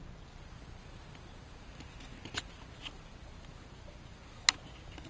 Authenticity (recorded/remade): recorded